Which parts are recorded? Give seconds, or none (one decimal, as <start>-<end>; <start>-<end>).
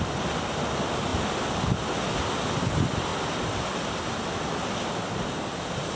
0.0-6.0